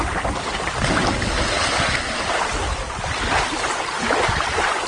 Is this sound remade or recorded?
recorded